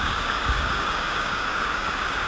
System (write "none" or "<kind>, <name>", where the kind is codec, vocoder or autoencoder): codec, DAC